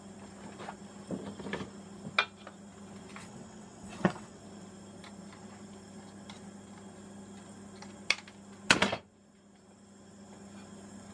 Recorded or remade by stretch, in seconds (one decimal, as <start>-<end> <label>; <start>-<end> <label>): 0.0-3.2 recorded; 3.2-4.4 remade; 4.4-11.1 recorded